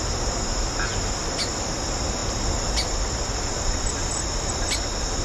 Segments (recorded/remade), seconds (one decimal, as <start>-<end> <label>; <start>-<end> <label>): 0.0-5.2 recorded